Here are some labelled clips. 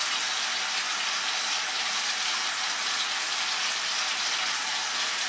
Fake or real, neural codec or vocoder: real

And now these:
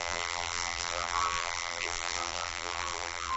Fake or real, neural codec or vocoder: fake, vocoder, BigVGAN v2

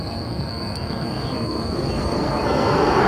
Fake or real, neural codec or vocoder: fake, codec, SNAC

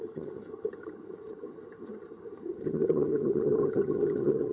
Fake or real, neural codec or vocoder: fake, vocoder, HiFi-GAN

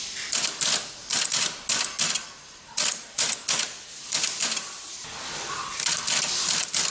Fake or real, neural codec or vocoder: real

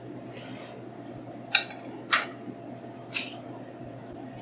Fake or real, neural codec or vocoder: real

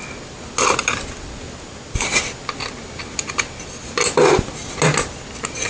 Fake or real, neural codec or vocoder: real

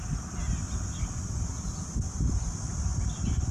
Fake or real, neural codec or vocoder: real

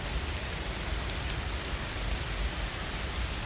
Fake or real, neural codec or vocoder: real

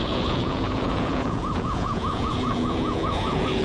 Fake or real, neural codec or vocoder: fake, vocoder, Vocos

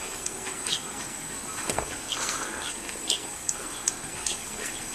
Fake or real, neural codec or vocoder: fake, codec, SNAC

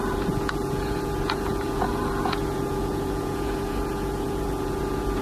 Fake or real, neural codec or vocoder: fake, vocoder, Vocos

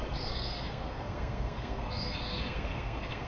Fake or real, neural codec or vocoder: fake, codec, SNAC